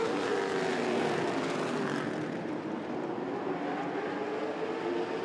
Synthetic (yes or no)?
no